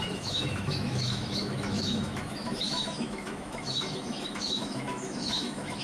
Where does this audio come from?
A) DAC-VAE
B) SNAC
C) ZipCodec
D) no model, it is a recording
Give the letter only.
A